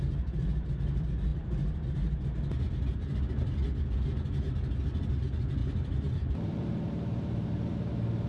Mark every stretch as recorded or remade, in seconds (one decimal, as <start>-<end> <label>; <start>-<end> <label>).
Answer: 0.0-5.6 recorded; 5.6-7.9 remade; 7.9-8.3 recorded